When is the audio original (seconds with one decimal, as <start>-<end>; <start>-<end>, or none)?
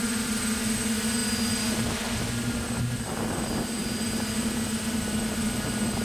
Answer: 0.0-6.0